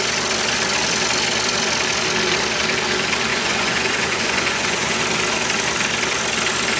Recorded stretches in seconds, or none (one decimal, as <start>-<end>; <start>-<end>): 0.0-3.3; 5.0-6.8